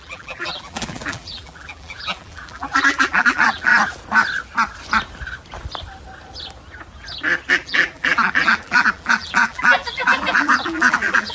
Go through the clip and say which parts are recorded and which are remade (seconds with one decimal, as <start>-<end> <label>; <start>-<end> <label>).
0.0-3.7 remade; 3.7-7.5 recorded; 7.5-11.3 remade